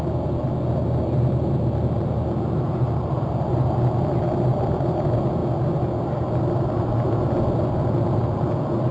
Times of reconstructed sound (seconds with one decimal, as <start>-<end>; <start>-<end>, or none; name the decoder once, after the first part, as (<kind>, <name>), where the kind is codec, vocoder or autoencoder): none